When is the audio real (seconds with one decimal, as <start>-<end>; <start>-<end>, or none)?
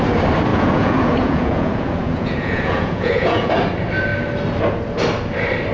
0.0-0.5; 3.5-5.7